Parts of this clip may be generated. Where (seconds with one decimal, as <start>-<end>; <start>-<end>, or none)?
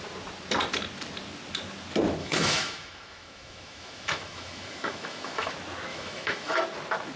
2.2-5.5; 5.9-6.6